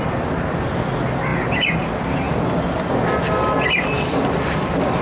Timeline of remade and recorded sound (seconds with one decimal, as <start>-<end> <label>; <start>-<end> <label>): 0.0-5.0 recorded